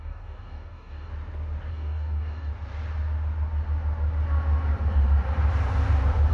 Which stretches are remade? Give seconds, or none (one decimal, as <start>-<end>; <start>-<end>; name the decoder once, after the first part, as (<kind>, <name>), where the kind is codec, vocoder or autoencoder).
0.0-1.1 (codec, DAC); 1.7-2.5